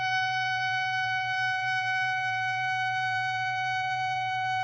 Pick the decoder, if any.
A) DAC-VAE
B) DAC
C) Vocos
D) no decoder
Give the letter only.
C